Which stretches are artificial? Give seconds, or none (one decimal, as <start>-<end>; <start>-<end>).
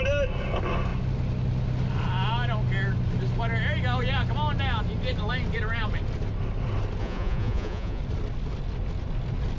7.0-8.0